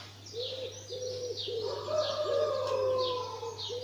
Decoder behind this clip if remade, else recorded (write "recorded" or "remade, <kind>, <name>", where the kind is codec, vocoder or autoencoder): recorded